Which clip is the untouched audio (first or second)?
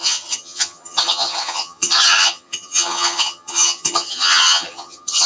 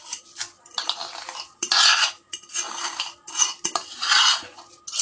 second